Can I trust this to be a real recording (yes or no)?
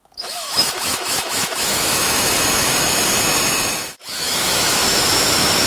no